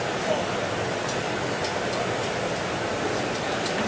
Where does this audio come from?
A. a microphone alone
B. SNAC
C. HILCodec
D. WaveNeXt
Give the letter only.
A